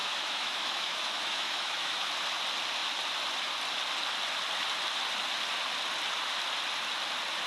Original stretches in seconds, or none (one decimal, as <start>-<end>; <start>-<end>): 2.1-7.5